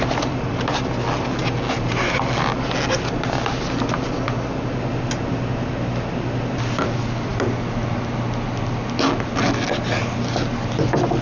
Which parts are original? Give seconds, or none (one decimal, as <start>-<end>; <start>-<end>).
0.0-11.2